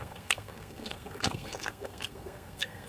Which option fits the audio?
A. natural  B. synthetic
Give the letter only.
B